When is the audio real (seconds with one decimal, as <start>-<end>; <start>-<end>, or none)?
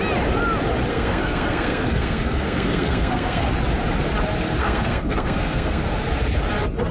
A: 0.0-0.9; 3.5-4.6; 5.8-6.9